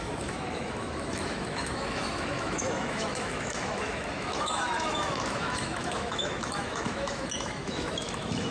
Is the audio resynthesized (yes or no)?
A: yes